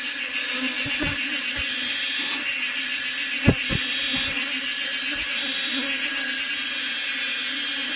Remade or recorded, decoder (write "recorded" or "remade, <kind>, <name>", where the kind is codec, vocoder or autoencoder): recorded